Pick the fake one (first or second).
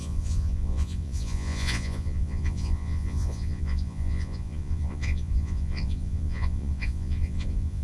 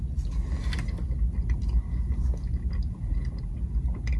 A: first